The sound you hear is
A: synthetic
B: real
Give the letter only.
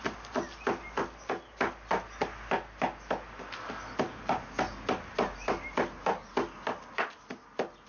B